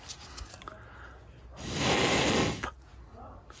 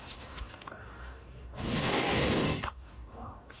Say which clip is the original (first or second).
first